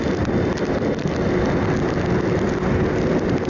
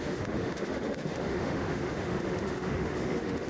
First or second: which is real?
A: first